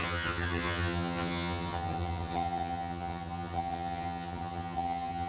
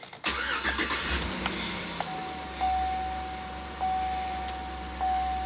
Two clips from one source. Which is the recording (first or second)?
second